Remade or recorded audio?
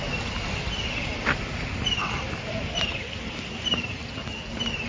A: recorded